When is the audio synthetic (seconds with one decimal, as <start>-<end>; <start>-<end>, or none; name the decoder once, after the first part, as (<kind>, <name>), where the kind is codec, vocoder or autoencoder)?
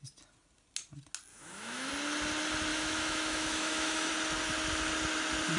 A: 1.3-1.9 (autoencoder, DAC-VAE); 2.7-4.1